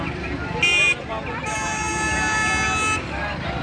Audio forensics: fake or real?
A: real